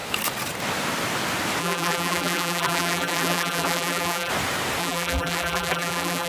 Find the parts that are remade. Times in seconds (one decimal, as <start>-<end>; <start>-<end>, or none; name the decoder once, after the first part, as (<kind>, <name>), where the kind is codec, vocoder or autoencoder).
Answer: 1.6-4.3 (vocoder, BigVGAN v2); 4.8-6.3

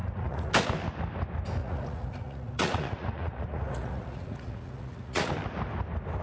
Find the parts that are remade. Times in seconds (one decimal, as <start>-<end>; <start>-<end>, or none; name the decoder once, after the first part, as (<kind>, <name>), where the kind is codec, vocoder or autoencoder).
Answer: 0.0-0.5 (vocoder, Vocos); 1.6-5.3

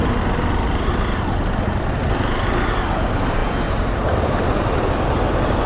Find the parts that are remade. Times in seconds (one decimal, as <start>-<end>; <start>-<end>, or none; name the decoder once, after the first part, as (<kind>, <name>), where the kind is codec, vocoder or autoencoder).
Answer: none